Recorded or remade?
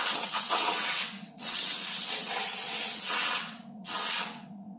remade